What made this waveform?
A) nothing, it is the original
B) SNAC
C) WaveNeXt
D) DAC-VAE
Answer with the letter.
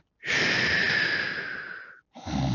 A